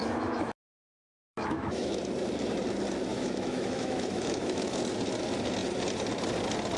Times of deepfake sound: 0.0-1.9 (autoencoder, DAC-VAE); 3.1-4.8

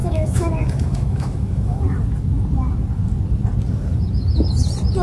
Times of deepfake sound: 0.0-1.8 (autoencoder, DAC-VAE)